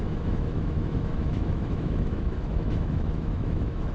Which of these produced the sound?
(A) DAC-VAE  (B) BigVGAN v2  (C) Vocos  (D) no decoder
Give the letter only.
A